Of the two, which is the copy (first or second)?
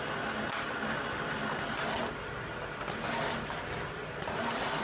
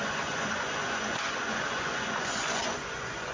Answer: second